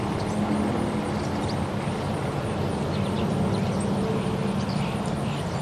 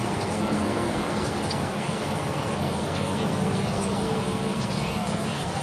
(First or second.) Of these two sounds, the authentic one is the first